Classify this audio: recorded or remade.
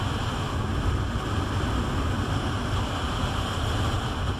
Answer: recorded